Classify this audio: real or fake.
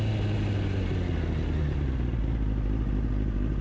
real